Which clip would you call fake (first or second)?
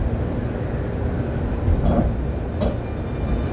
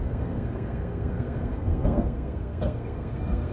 second